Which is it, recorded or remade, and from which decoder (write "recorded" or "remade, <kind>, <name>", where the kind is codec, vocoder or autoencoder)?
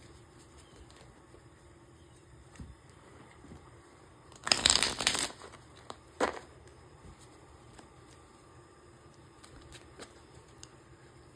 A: remade, vocoder, BigVGAN v2